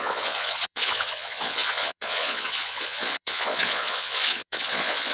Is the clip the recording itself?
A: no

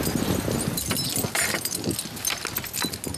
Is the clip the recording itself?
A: yes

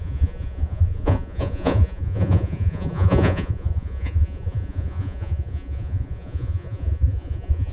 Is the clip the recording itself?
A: no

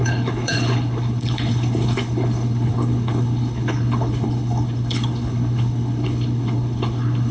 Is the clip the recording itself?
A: no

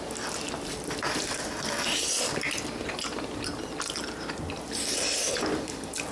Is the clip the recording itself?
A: yes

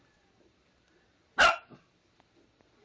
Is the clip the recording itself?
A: no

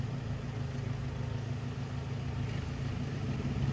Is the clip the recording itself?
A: yes